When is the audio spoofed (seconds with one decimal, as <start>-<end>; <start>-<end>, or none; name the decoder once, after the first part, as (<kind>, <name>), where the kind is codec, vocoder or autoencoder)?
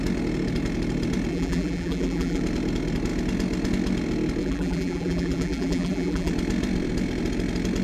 1.3-2.4 (vocoder, BigVGAN v2); 4.4-6.3